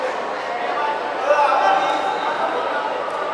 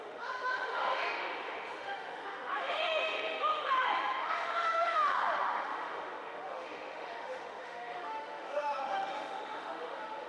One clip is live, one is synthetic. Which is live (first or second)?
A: first